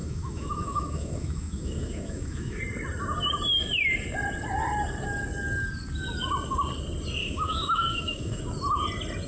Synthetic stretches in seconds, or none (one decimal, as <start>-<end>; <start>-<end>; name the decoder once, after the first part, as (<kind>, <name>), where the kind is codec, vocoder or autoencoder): 0.0-2.6 (autoencoder, DAC-VAE); 7.2-8.4